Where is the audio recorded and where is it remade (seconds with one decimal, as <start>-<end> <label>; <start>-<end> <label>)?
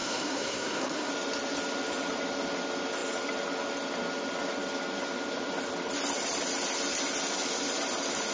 0.0-1.1 remade; 1.1-8.3 recorded